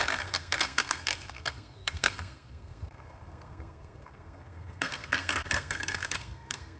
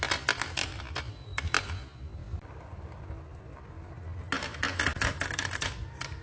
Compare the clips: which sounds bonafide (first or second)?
second